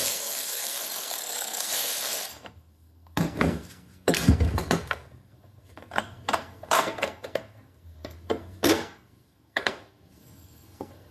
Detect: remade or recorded remade